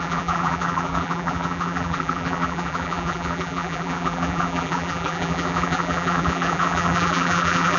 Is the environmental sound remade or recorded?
remade